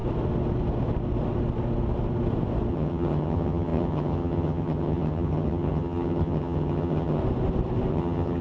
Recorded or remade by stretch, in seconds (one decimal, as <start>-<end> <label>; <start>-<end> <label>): 0.0-2.7 recorded; 2.7-7.2 remade; 7.2-7.9 recorded; 7.9-8.4 remade